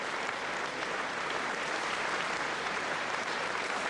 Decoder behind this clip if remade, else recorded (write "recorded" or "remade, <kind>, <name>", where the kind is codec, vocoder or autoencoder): remade, vocoder, BigVGAN v2